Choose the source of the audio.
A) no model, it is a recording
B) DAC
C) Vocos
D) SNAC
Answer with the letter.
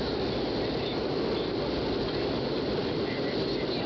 A